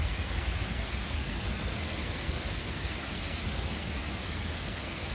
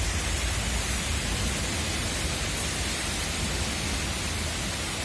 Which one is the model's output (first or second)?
first